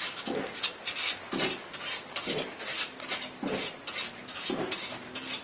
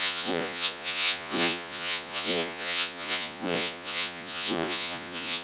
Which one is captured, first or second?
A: first